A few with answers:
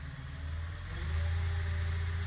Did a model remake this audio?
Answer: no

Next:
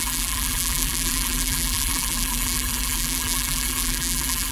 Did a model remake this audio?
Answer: yes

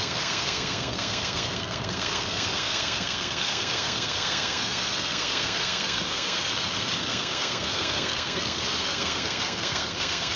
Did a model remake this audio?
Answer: yes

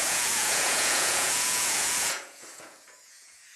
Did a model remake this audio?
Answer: yes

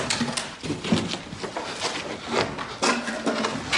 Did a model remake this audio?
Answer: no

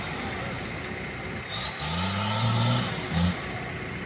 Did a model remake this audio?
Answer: no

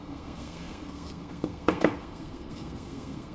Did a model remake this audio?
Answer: yes